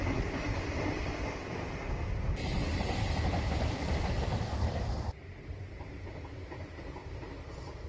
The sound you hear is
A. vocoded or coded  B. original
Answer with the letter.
B